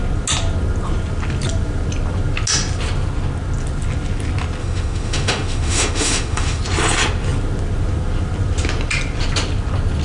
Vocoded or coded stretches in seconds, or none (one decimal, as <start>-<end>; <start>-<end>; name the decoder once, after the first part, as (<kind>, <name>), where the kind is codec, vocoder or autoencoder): 4.6-6.6 (autoencoder, DAC-VAE)